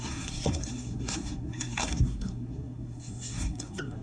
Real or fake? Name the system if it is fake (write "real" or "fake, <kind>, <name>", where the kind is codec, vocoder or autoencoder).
fake, codec, SNAC